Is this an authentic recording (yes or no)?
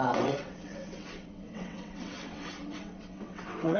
no